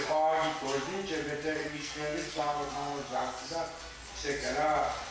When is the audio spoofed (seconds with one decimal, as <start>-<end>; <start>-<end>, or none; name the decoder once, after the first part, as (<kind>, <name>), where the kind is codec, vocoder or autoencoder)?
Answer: 1.6-2.7 (codec, SNAC)